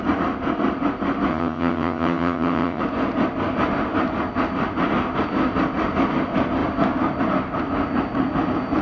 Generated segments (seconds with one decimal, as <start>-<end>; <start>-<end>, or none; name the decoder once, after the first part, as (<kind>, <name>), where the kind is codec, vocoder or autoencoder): 1.3-2.8 (vocoder, HiFi-GAN)